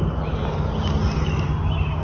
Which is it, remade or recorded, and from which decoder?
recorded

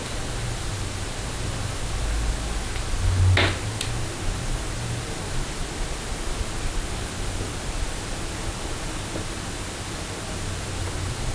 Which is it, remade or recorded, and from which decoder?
recorded